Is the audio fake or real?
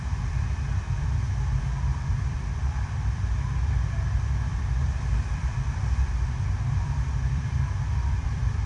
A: fake